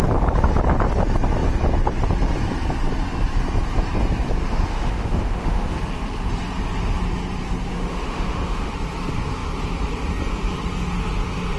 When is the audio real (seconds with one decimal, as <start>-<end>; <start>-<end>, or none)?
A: 0.0-4.4; 5.7-7.7; 8.7-11.6